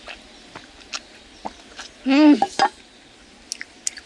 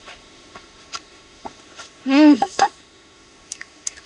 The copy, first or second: second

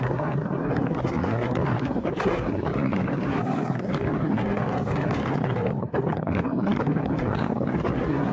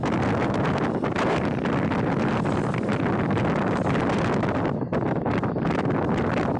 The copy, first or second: first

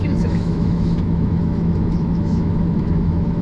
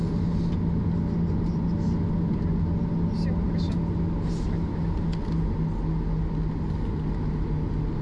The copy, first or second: first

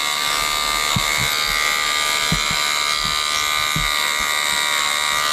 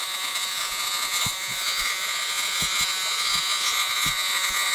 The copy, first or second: second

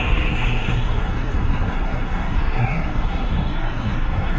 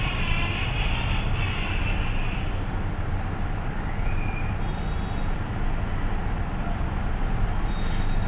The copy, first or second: first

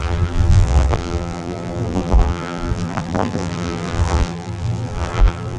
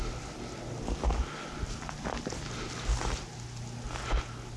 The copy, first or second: first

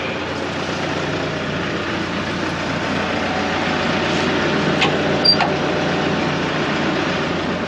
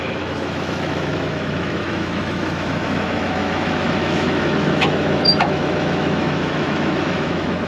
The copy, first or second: second